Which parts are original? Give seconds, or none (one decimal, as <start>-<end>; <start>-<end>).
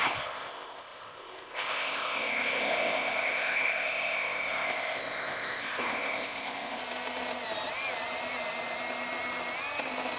6.8-10.2